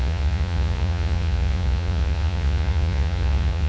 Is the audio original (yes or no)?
no